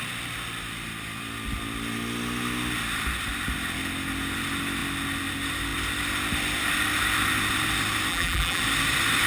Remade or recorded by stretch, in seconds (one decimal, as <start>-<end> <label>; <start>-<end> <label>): 0.0-8.1 recorded; 8.1-8.6 remade; 8.6-9.3 recorded